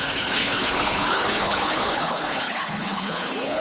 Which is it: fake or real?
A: fake